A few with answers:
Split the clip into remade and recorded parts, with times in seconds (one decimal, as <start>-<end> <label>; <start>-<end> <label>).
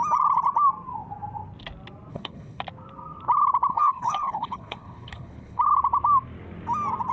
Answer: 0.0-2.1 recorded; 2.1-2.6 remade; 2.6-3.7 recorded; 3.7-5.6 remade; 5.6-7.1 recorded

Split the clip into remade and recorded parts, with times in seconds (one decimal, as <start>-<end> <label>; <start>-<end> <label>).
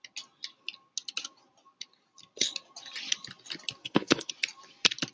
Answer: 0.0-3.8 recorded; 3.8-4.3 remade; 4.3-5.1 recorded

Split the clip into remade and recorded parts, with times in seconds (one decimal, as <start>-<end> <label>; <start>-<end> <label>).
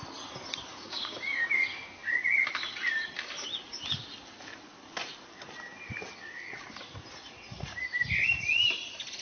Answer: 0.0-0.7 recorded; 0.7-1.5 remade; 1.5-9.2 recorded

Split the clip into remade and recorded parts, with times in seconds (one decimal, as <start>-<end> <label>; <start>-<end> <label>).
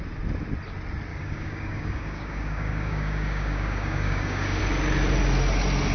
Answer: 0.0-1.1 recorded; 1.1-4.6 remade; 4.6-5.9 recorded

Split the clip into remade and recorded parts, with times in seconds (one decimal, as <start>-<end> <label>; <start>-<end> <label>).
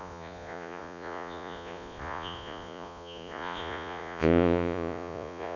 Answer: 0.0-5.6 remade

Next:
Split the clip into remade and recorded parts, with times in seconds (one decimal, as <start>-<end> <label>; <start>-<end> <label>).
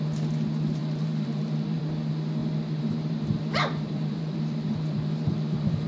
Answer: 0.0-0.8 recorded; 0.8-1.8 remade; 1.8-2.4 recorded; 2.4-5.9 remade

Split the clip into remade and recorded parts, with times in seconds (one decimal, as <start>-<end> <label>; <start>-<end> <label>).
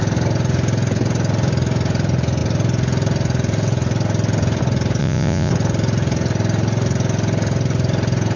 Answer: 0.0-5.0 recorded; 5.0-5.5 remade; 5.5-8.4 recorded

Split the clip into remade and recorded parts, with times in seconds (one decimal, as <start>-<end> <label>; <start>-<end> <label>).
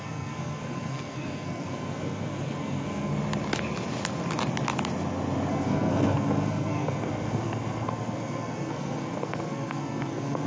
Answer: 0.0-3.1 remade; 3.1-5.5 recorded; 5.5-10.5 remade